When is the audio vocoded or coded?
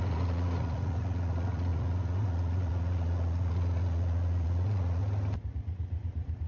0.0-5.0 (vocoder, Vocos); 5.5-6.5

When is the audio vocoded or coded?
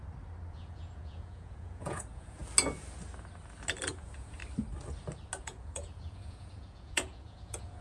0.5-2.4 (vocoder, Vocos); 3.9-4.4; 5.4-7.8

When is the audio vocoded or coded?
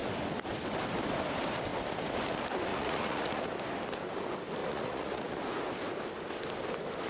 2.7-3.4 (vocoder, Vocos); 4.6-5.4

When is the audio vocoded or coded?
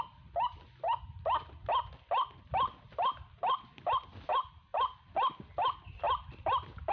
none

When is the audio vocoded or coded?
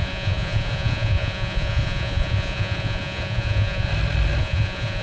0.0-3.9 (vocoder, Vocos); 4.4-5.0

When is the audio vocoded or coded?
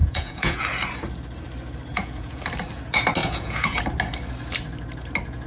0.0-0.6 (vocoder, Vocos); 1.9-2.4; 3.2-3.8